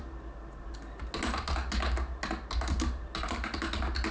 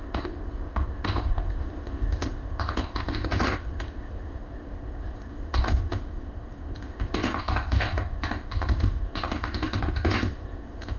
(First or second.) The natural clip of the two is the first